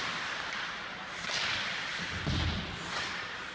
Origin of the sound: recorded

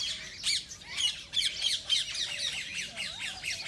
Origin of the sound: recorded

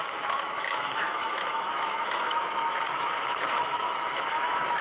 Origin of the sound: remade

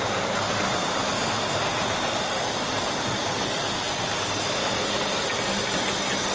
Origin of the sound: recorded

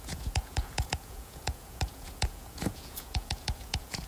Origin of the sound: remade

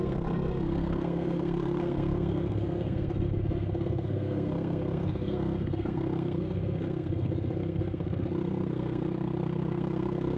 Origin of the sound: remade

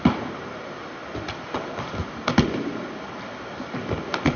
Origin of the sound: recorded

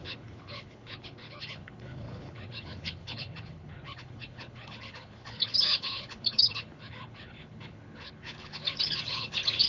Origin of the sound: remade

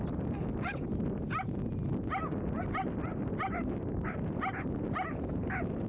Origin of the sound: recorded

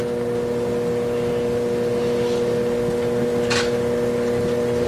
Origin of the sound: recorded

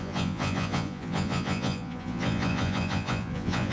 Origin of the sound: remade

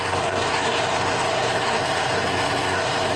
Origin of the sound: remade